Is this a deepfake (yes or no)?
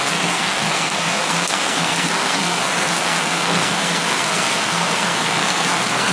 yes